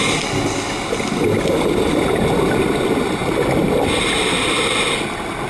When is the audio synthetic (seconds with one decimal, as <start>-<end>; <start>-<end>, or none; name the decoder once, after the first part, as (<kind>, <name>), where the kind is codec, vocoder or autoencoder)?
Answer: none